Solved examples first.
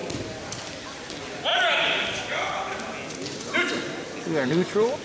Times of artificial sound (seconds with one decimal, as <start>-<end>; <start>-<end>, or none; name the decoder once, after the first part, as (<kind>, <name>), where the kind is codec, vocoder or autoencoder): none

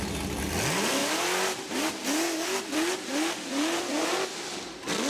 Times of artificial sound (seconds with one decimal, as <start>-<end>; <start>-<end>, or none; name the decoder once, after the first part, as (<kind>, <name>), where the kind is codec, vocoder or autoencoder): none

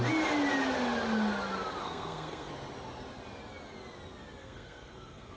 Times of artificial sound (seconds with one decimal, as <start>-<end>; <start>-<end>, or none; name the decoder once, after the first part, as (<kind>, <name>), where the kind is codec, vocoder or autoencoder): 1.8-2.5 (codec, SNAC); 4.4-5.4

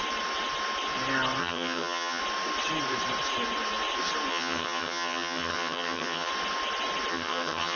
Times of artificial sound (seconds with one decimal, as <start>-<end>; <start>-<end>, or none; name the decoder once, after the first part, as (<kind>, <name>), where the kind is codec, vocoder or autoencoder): 1.4-2.2 (vocoder, HiFi-GAN); 4.3-6.3; 7.1-7.8

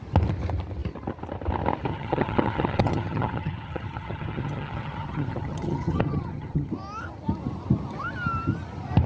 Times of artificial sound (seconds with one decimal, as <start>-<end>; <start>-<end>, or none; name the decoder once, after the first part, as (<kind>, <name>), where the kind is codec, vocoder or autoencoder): 1.9-6.7 (vocoder, HiFi-GAN)

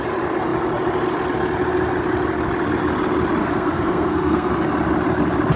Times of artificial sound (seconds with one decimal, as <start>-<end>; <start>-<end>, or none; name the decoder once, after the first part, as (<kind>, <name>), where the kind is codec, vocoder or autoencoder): 3.4-4.5 (codec, SNAC)